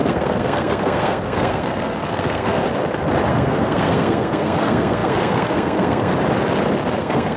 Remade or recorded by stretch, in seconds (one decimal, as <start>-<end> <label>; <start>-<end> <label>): 0.0-2.6 remade; 2.6-3.3 recorded; 3.3-6.1 remade; 6.1-7.0 recorded; 7.0-7.4 remade

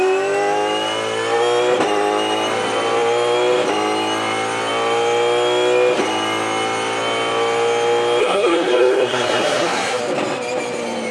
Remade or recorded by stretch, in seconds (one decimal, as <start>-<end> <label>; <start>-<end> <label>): 0.0-8.2 recorded; 8.2-10.0 remade; 10.0-11.1 recorded

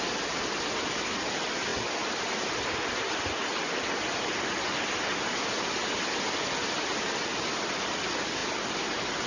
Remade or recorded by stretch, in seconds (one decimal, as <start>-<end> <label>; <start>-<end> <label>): 0.0-9.3 recorded

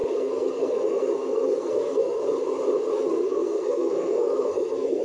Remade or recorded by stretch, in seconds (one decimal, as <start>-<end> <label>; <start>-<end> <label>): 0.0-2.2 remade; 2.2-2.9 recorded; 2.9-5.0 remade

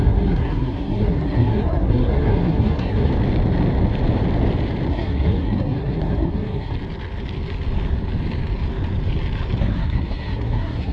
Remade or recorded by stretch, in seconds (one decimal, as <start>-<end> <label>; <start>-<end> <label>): 0.0-3.1 remade; 3.1-4.9 recorded; 4.9-6.7 remade; 6.7-9.6 recorded; 9.6-10.9 remade

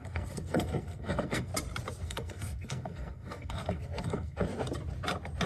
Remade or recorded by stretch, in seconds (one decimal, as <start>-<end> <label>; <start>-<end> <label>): 0.0-1.5 remade; 1.5-2.0 recorded; 2.0-4.5 remade; 4.5-5.5 recorded

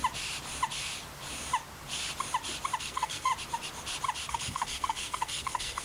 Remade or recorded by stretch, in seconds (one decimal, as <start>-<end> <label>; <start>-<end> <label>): 0.0-2.8 recorded; 2.8-3.3 remade; 3.3-4.3 recorded; 4.3-5.8 remade